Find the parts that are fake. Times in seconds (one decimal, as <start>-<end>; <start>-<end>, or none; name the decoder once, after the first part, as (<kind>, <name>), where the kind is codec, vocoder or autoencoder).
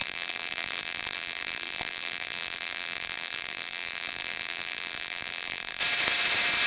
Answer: 0.0-5.8 (vocoder, BigVGAN v2)